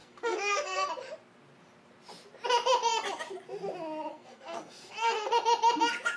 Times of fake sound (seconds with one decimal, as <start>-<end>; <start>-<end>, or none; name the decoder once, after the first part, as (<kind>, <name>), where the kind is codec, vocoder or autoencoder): 0.0-0.9 (codec, SNAC); 4.1-5.3